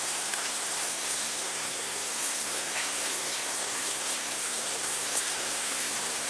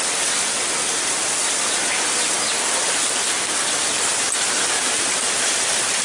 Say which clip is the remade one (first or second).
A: first